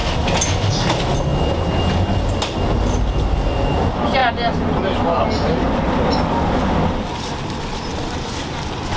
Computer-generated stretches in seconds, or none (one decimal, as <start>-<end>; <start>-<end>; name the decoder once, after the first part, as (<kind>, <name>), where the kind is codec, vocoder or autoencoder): none